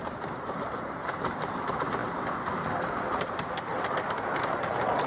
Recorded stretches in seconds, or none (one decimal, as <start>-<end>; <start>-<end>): none

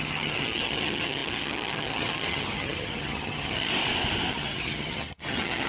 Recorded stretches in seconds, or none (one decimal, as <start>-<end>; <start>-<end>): 3.7-4.3

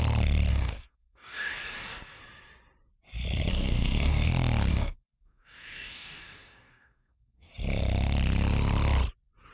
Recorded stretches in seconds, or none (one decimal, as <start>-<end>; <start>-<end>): 0.0-0.5; 2.2-3.5; 4.3-4.7; 7.5-9.5